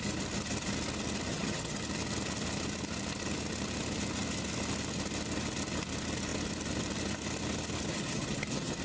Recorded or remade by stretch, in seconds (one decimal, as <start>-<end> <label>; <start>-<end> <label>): 0.0-1.3 recorded; 1.3-1.8 remade; 1.8-7.9 recorded; 7.9-8.8 remade